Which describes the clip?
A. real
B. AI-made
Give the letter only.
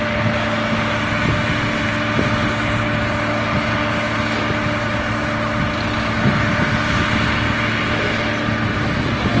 A